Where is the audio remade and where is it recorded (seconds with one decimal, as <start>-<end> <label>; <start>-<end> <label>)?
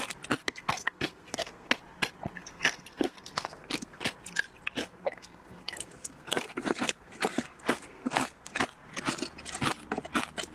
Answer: 0.0-0.4 recorded; 0.4-1.8 remade; 1.8-2.4 recorded; 2.4-4.1 remade; 4.1-4.8 recorded; 4.8-8.6 remade; 8.6-10.5 recorded